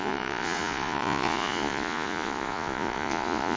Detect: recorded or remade remade